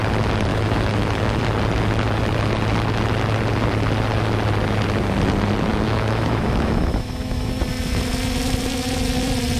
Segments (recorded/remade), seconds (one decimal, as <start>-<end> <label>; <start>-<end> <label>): 0.0-0.5 recorded; 0.5-1.4 remade; 1.4-5.7 recorded; 5.7-7.5 remade; 7.5-9.6 recorded